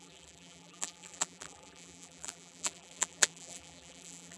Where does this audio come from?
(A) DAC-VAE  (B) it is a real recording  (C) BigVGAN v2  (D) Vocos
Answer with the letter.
C